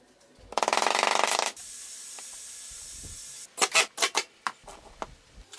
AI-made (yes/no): no